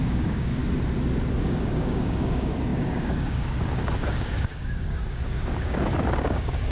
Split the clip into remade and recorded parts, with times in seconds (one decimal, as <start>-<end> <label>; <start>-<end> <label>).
0.0-0.6 remade; 0.6-1.3 recorded; 1.3-6.7 remade